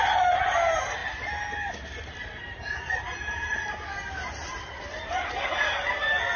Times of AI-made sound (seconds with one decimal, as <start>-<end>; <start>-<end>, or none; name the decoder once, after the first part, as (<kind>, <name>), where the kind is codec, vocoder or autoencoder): none